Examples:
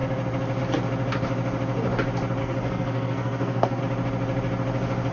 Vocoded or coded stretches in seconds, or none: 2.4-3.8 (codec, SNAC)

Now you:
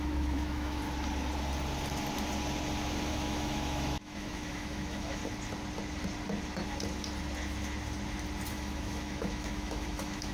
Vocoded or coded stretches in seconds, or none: 0.0-0.8 (autoencoder, DAC-VAE); 3.1-5.2; 8.5-10.3

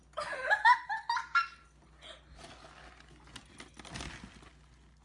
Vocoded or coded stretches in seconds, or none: none

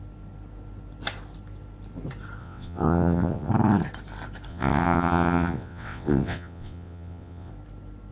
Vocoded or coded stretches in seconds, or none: 2.4-3.5 (vocoder, WaveNeXt); 4.5-7.5

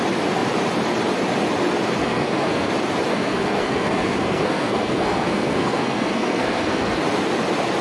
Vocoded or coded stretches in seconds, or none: 2.0-2.7 (codec, SNAC); 3.1-7.0

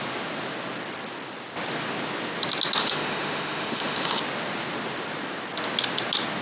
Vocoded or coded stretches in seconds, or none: 2.8-4.2 (autoencoder, DAC-VAE)